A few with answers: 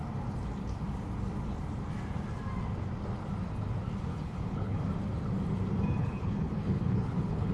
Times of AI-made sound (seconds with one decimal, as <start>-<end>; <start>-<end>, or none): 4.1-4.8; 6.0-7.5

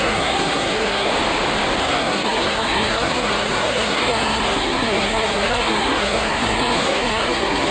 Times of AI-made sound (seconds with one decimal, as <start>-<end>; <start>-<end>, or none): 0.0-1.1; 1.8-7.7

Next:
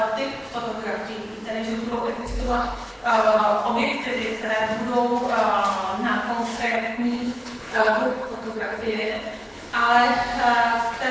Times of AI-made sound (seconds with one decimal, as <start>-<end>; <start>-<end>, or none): 1.7-3.4; 3.8-4.5; 6.5-9.7